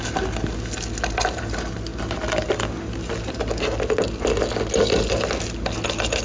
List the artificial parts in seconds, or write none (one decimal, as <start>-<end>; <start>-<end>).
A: none